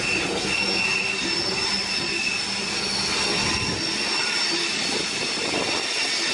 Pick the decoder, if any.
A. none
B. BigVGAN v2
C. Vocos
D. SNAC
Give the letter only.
A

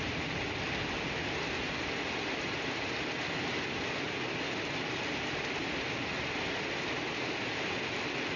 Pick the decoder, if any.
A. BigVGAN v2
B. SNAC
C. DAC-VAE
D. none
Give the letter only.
D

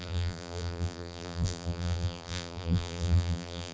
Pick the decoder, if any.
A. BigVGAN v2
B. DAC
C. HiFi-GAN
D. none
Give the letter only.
A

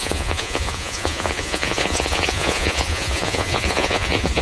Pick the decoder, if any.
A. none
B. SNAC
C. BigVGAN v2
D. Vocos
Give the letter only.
D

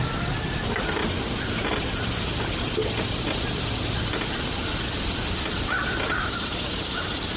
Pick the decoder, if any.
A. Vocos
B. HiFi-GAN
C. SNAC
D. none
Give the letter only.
D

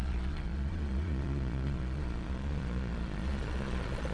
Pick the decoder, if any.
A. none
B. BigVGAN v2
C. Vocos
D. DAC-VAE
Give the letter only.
C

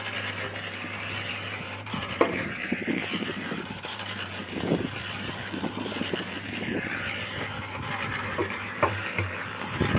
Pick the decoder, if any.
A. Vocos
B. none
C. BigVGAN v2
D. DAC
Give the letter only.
C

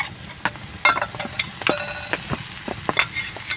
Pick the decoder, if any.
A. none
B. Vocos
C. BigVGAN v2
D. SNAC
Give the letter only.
A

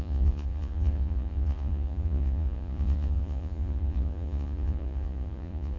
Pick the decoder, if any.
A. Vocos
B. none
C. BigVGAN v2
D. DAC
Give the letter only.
A